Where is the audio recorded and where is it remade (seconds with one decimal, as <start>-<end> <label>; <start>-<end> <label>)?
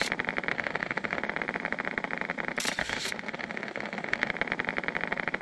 0.0-0.5 recorded; 0.5-1.2 remade; 1.2-2.8 recorded; 2.8-4.3 remade; 4.3-5.4 recorded